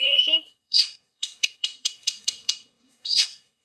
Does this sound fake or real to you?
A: fake